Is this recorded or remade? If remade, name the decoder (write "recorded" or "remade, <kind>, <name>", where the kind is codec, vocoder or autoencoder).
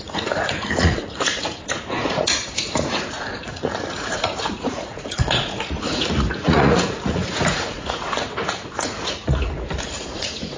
remade, vocoder, Vocos